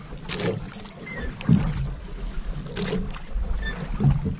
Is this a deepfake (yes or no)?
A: no